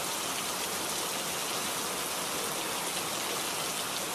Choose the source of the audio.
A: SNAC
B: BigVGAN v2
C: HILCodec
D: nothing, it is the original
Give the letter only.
D